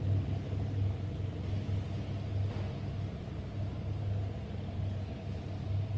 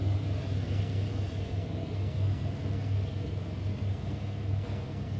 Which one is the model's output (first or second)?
second